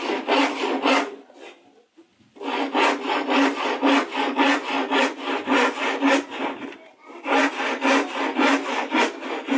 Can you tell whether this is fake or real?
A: real